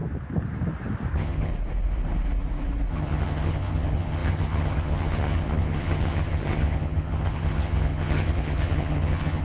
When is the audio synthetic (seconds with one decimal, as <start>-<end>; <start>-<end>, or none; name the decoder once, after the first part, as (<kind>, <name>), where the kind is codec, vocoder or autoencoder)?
1.1-1.5 (vocoder, HiFi-GAN); 2.9-9.4

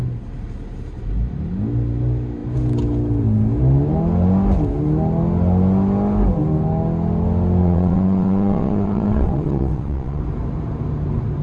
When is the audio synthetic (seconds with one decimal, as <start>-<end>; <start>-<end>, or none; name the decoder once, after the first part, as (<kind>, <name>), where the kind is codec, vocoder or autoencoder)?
7.6-10.2 (vocoder, WaveNeXt)

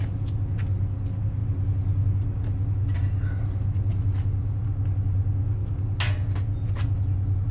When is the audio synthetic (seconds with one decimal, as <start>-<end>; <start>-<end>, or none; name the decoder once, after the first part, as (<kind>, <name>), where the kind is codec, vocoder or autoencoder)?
none